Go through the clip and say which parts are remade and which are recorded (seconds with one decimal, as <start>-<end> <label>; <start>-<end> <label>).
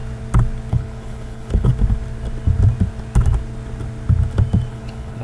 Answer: 0.0-0.7 recorded; 0.7-1.7 remade; 1.7-4.7 recorded; 4.7-5.2 remade